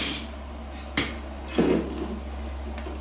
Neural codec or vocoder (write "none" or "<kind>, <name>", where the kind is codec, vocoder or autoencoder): none